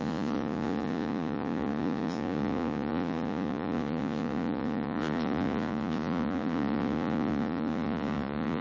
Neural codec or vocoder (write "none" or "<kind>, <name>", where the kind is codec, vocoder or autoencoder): vocoder, Vocos